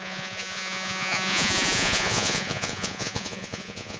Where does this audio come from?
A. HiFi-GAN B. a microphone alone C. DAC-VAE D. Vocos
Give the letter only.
D